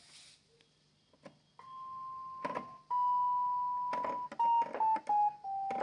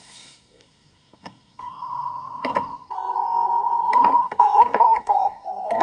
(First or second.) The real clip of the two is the first